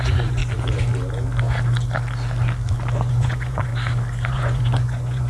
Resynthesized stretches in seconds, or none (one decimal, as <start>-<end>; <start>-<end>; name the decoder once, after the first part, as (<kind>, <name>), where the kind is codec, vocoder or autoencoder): 0.0-0.4 (vocoder, Vocos); 3.1-3.7; 4.3-5.3